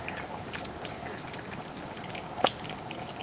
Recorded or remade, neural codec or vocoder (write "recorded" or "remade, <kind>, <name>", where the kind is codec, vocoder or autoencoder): recorded